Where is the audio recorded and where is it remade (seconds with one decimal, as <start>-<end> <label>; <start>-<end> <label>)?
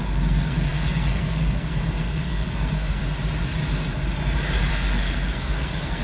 0.0-3.0 remade; 3.0-4.7 recorded; 4.7-6.0 remade